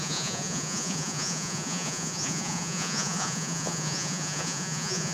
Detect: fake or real fake